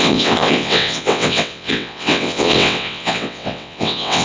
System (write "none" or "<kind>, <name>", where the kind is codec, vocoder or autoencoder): vocoder, WaveNeXt